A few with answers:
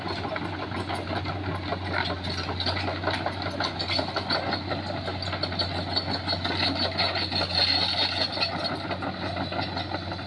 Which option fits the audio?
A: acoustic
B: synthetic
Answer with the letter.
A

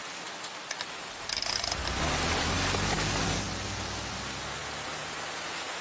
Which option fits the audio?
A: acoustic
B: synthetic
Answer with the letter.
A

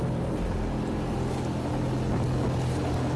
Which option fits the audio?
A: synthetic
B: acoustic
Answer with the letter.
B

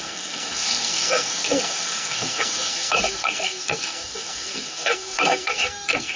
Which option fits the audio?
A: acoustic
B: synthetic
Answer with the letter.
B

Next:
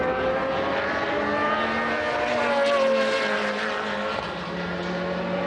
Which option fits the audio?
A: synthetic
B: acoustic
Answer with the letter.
B